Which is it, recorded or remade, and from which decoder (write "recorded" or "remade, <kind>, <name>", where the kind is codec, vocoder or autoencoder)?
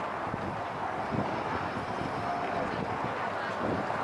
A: recorded